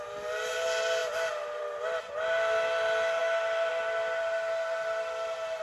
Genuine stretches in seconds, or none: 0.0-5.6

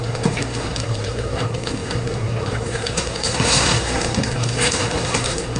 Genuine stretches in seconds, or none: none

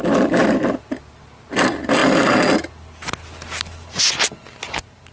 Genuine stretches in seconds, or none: 0.0-5.1

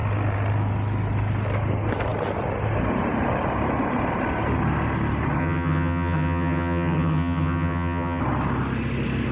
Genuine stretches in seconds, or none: 0.0-5.4; 8.2-9.3

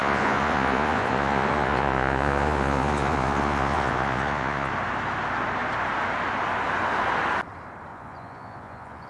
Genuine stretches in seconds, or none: 4.7-7.9

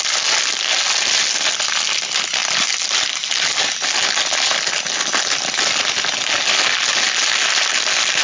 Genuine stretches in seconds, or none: 0.0-8.2